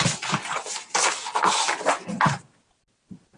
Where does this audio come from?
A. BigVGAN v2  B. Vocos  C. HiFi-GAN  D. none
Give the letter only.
D